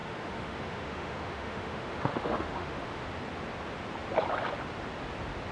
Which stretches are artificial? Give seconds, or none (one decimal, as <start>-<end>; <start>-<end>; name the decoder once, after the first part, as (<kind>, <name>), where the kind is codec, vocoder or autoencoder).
0.0-3.0 (autoencoder, DAC-VAE)